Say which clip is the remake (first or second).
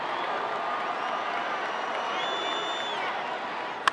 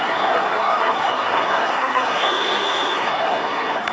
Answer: second